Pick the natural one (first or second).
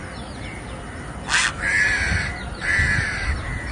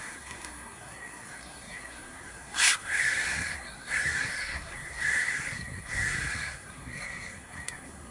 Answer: first